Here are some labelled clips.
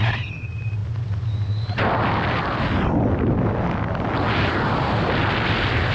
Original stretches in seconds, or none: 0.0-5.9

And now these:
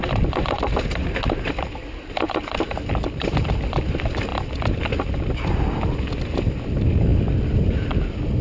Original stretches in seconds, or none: 0.0-8.4

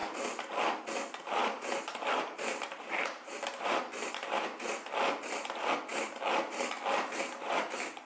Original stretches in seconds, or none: 0.0-1.4; 3.8-8.1